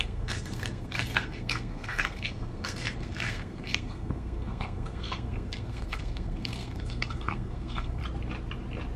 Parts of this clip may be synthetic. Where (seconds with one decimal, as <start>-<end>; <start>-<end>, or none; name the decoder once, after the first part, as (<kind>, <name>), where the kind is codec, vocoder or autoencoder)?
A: 0.0-8.0 (codec, SNAC)